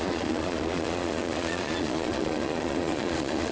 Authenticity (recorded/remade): remade